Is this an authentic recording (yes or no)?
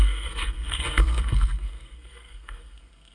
no